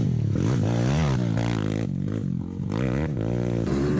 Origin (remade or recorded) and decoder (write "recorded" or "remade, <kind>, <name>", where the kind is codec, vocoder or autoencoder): recorded